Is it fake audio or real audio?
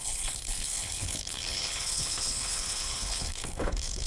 fake